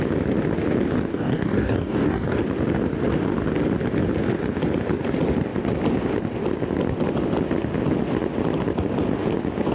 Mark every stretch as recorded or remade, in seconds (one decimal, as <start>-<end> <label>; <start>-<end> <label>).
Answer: 0.0-1.1 recorded; 1.1-2.4 remade; 2.4-9.7 recorded